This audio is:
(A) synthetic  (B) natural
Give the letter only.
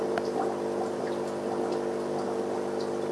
B